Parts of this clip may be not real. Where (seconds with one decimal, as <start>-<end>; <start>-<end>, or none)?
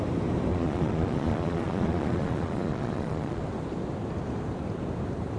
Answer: 0.5-3.4